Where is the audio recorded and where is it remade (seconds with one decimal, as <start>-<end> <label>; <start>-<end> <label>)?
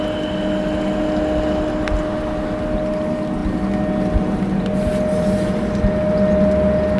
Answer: 0.0-7.0 recorded